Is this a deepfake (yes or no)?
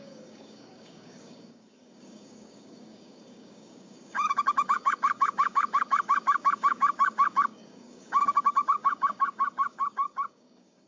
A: yes